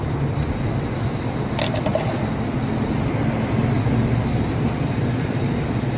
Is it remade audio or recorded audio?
recorded